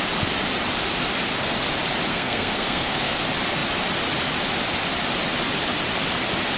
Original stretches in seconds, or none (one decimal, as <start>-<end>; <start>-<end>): 0.0-2.1; 3.2-6.6